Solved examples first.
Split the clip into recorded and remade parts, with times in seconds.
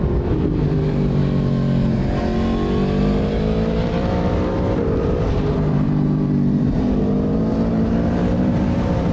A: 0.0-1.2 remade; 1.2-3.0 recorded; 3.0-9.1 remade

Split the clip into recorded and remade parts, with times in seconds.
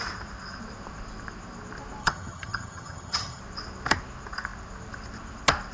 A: 0.0-2.0 recorded; 2.0-3.4 remade; 3.4-5.7 recorded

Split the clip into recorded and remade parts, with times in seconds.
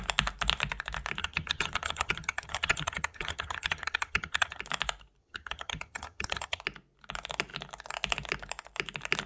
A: 0.0-1.2 recorded; 1.2-4.6 remade; 4.6-5.2 recorded; 5.2-6.6 remade; 6.6-9.3 recorded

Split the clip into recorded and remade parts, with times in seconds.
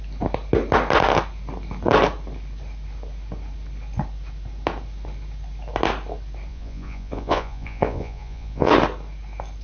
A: 0.0-6.5 recorded; 6.5-8.7 remade; 8.7-9.6 recorded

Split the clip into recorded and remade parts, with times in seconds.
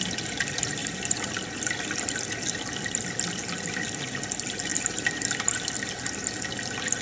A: 0.0-0.8 recorded; 0.8-1.3 remade; 1.3-7.0 recorded